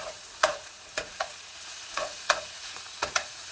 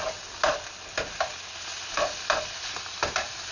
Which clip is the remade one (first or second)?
first